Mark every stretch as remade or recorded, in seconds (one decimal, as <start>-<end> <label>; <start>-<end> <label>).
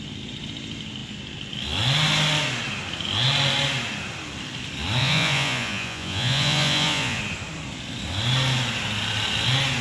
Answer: 0.0-5.0 recorded; 5.0-7.2 remade; 7.2-9.8 recorded